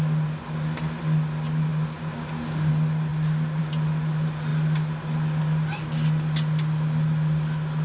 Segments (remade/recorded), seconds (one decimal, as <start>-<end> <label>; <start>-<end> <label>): 0.0-7.8 recorded